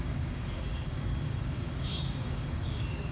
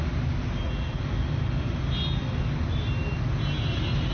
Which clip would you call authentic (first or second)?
second